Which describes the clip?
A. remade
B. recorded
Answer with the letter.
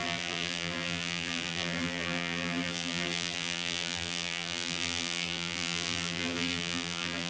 A